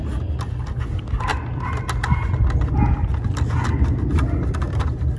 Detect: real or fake real